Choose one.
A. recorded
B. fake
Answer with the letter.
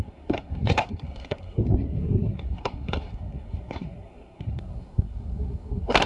B